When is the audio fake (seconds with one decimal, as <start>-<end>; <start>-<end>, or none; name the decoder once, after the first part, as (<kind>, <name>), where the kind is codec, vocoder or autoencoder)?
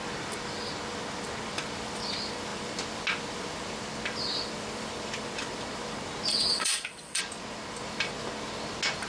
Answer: 6.3-7.2 (vocoder, WaveNeXt)